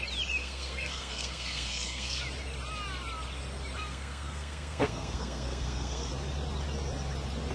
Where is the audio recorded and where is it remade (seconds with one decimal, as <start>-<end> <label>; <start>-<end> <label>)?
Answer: 0.0-0.4 recorded; 0.4-2.2 remade; 2.2-3.8 recorded; 3.8-6.1 remade; 6.1-7.5 recorded